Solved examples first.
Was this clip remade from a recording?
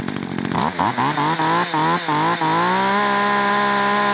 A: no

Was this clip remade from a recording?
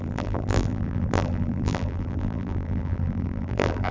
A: yes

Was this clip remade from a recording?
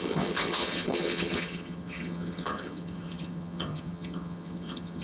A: yes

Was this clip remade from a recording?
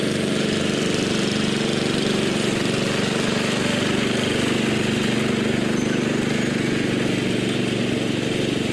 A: no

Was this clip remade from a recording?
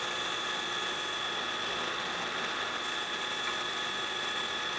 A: no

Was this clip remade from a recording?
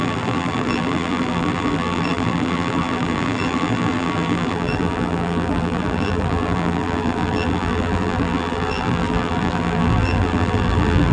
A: yes